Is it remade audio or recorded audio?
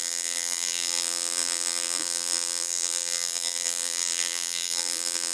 remade